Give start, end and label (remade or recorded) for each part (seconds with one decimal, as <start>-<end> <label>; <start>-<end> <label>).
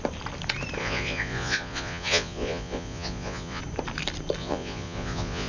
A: 0.0-0.8 recorded; 0.8-3.6 remade; 3.6-4.4 recorded; 4.4-5.5 remade